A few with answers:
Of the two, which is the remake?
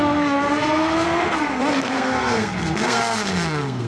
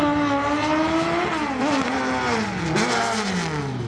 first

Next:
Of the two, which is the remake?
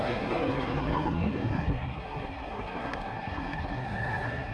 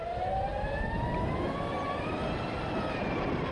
first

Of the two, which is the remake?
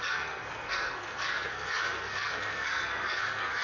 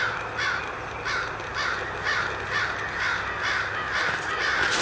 first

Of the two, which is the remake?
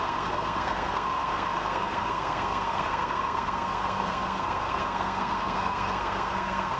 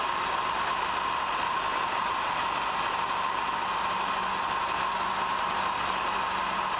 first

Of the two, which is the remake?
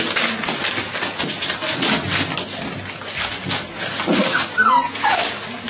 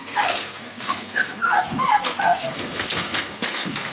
second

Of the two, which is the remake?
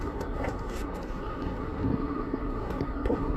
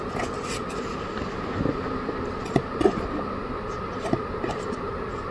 first